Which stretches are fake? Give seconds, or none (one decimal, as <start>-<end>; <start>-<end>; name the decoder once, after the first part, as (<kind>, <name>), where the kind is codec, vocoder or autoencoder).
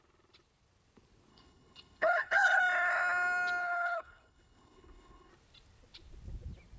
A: 1.3-2.6 (codec, HILCodec); 3.6-5.3